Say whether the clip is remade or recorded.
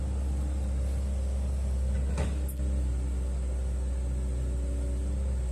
recorded